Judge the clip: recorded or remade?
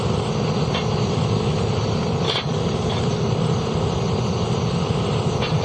recorded